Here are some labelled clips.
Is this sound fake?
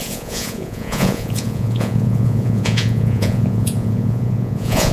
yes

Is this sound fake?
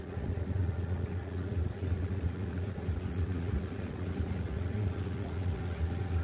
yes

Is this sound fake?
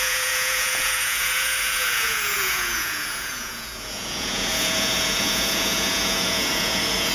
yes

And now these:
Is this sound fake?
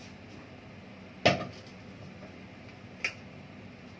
no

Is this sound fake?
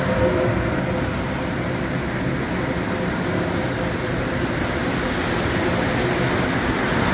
no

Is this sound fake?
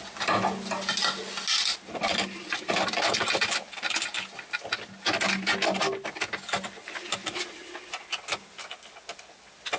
no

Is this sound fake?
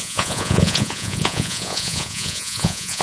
yes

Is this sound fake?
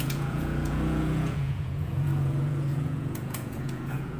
yes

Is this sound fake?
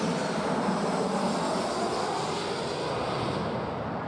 no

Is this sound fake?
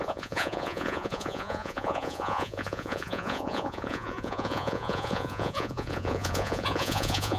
yes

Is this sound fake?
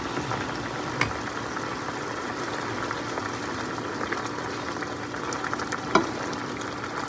no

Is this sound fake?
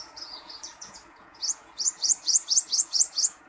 yes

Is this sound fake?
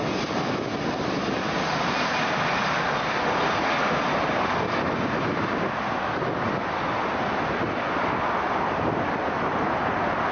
no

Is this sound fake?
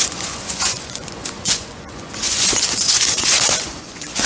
yes